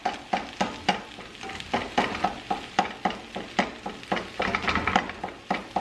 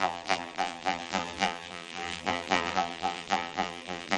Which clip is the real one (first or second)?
first